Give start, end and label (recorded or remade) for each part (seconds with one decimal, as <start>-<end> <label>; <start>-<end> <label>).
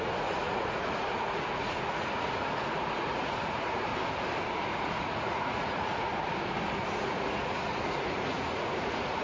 0.0-3.9 remade; 3.9-4.7 recorded; 4.7-6.1 remade; 6.1-7.0 recorded; 7.0-9.2 remade